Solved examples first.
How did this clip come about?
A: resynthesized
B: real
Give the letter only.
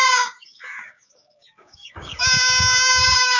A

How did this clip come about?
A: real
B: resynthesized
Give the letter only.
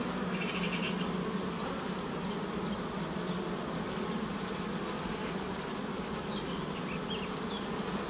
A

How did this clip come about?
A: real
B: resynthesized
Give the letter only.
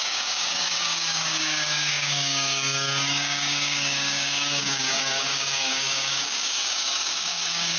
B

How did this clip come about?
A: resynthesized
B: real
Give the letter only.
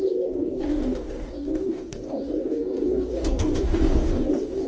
A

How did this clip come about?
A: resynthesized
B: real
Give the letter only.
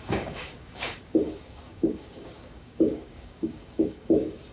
A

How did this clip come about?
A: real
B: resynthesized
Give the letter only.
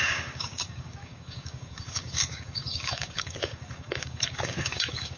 B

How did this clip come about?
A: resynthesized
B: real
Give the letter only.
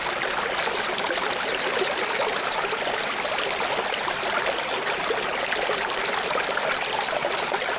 B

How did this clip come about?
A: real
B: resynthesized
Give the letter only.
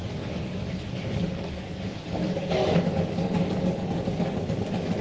B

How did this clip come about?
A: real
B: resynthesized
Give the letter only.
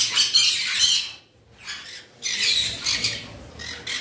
A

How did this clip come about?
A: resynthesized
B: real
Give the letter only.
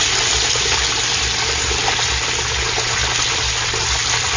B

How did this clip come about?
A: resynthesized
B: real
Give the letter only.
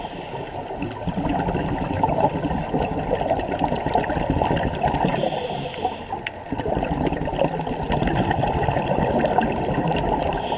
B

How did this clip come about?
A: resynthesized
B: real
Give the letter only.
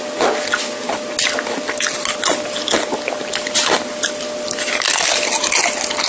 B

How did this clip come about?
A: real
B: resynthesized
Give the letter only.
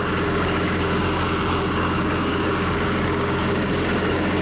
B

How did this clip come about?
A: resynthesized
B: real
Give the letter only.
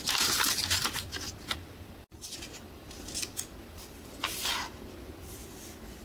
B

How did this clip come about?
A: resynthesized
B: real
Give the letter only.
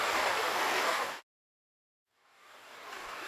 A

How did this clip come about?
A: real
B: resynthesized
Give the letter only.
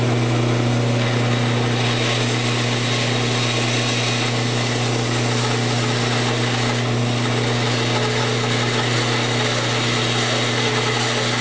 A